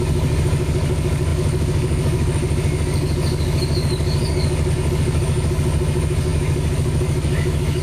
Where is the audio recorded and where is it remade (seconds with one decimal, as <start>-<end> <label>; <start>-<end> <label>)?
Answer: 0.0-7.8 remade